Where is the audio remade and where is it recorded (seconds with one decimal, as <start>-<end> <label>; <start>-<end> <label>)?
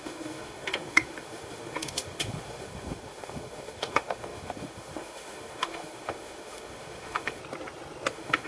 0.0-7.4 remade; 7.4-8.1 recorded; 8.1-8.5 remade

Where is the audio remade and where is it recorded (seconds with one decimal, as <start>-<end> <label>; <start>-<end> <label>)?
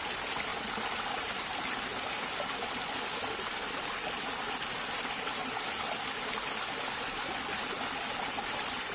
0.0-8.9 recorded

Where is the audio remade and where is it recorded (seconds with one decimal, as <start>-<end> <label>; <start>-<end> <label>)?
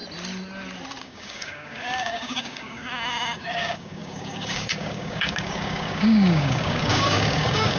0.0-1.0 recorded; 1.0-7.8 remade